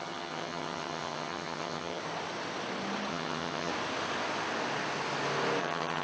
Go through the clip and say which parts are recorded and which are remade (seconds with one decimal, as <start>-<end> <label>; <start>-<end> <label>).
0.0-2.0 remade; 2.0-3.1 recorded; 3.1-3.7 remade; 3.7-5.6 recorded; 5.6-6.0 remade